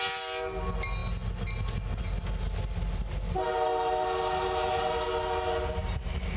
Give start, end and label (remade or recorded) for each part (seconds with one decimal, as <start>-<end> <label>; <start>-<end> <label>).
0.0-6.4 recorded